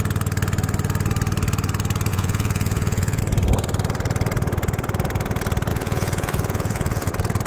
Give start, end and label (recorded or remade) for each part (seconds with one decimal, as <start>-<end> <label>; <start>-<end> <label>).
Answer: 0.0-2.1 recorded; 2.1-3.2 remade; 3.2-5.7 recorded; 5.7-7.1 remade; 7.1-7.5 recorded